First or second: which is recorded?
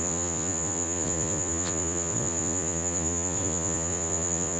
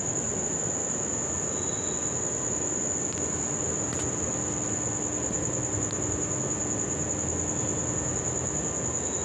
second